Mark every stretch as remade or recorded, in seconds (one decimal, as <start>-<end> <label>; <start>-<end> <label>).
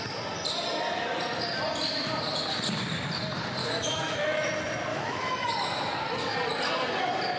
0.0-3.6 recorded; 3.6-4.5 remade; 4.5-4.9 recorded; 4.9-5.5 remade; 5.5-7.4 recorded